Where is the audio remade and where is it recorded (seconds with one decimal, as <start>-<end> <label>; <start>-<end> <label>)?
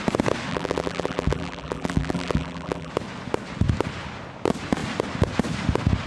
0.0-0.5 recorded; 0.5-2.9 remade; 2.9-6.1 recorded